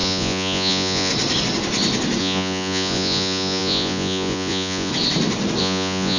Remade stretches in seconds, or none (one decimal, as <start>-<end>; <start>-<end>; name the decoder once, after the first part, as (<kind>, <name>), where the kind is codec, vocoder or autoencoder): 0.0-1.1 (vocoder, Vocos); 2.2-4.9; 5.6-6.2